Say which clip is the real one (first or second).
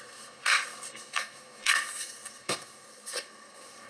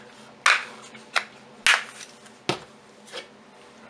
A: second